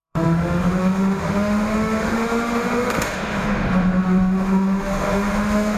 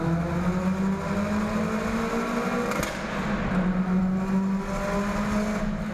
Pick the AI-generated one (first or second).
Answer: first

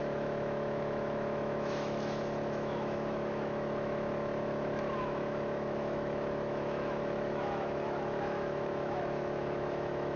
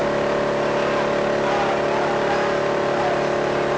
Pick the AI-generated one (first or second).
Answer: first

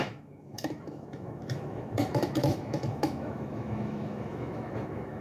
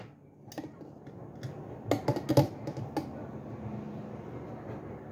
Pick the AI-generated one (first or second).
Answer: first